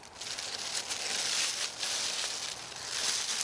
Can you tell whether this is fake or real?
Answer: real